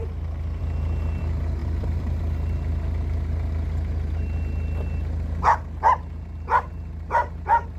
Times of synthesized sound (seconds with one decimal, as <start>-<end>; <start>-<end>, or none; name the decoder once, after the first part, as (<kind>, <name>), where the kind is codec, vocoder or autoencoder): 1.6-2.2 (vocoder, BigVGAN v2)